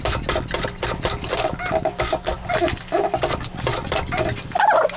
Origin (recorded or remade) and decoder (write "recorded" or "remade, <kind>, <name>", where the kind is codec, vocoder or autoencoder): recorded